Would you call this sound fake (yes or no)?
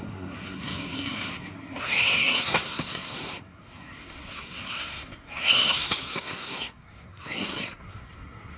yes